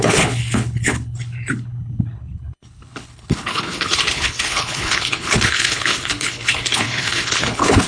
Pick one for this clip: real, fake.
fake